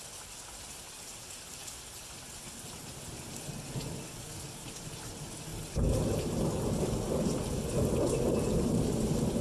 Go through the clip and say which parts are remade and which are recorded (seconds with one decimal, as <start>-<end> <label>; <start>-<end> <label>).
0.0-9.4 recorded